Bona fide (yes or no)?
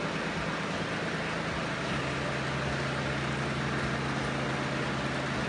yes